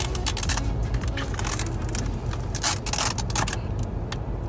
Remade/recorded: recorded